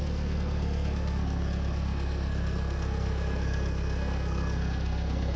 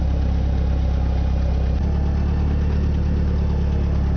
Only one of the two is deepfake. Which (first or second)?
first